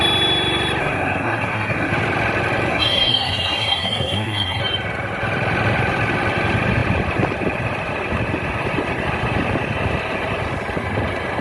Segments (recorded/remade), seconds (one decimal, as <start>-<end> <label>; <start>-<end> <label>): 0.0-0.8 recorded; 0.8-1.9 remade; 1.9-2.7 recorded; 2.7-4.6 remade; 4.6-11.4 recorded